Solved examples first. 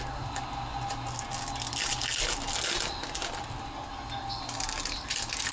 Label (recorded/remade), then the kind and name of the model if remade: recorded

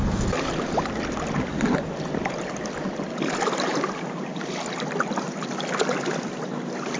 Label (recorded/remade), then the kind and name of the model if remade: recorded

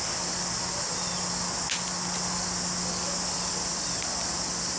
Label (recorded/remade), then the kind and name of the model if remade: recorded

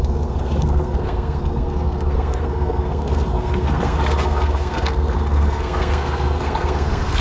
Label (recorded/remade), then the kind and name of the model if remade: remade, codec, SNAC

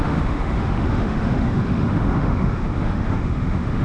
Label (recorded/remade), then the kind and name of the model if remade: remade, autoencoder, DAC-VAE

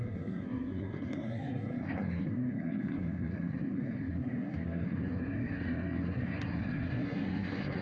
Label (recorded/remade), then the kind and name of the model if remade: remade, codec, SNAC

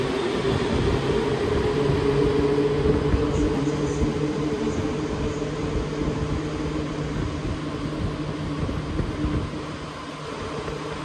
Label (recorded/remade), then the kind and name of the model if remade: recorded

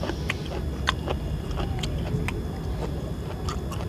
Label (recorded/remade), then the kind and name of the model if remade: recorded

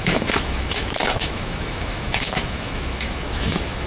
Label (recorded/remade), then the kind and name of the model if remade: remade, autoencoder, DAC-VAE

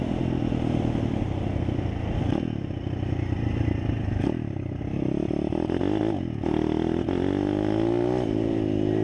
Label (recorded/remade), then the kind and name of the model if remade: recorded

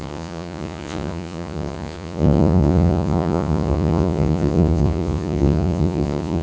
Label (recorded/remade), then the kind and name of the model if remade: remade, vocoder, Vocos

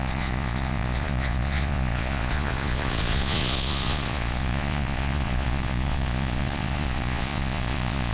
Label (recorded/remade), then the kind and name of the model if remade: remade, vocoder, Vocos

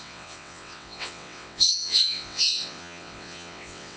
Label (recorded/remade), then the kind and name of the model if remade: remade, vocoder, WaveNeXt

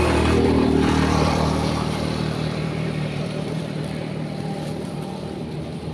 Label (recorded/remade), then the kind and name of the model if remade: remade, vocoder, BigVGAN v2